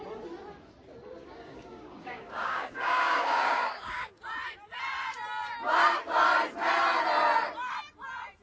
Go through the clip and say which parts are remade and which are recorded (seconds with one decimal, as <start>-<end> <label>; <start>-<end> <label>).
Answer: 0.0-1.2 recorded; 1.2-4.2 remade; 4.2-8.4 recorded